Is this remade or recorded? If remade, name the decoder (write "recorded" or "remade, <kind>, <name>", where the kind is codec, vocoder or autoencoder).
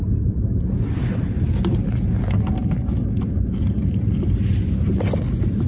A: recorded